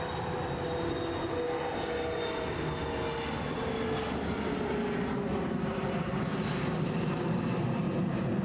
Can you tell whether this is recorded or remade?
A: recorded